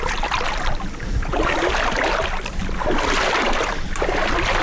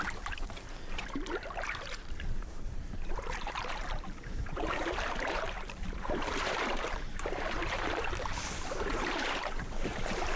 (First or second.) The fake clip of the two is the second